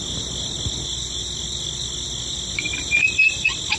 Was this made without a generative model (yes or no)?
yes